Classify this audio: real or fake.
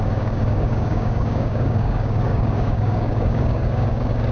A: fake